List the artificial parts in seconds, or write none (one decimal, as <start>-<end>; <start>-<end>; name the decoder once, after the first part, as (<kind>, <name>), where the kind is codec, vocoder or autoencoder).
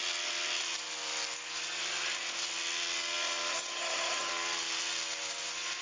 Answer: 3.5-4.3 (vocoder, HiFi-GAN)